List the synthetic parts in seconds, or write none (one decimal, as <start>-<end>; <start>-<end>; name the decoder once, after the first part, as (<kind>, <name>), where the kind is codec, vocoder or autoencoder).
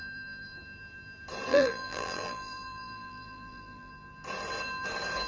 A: 1.5-3.9 (vocoder, BigVGAN v2)